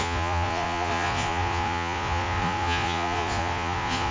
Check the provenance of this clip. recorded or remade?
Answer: remade